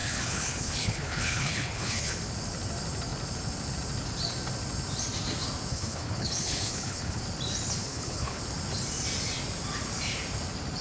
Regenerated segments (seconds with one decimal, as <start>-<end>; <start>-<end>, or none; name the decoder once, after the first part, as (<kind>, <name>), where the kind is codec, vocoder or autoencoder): 0.0-2.2 (codec, HILCodec); 5.7-7.2; 7.8-8.4